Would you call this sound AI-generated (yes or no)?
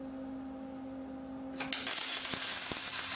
no